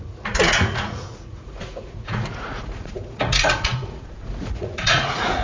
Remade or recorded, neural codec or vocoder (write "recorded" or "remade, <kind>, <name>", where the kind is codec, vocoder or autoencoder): remade, vocoder, Vocos